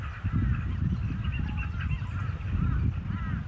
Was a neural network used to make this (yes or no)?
no